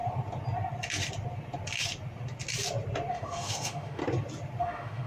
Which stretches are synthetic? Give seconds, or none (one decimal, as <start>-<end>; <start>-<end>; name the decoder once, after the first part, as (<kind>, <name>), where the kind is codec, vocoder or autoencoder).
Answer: 3.1-4.0 (autoencoder, DAC-VAE); 4.6-5.1